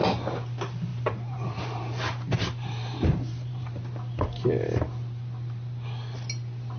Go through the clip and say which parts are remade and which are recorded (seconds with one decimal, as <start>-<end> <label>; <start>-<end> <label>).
0.0-0.9 recorded; 0.9-3.6 remade; 3.6-6.8 recorded